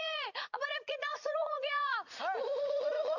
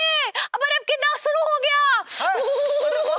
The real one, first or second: second